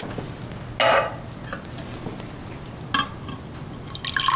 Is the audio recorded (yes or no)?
yes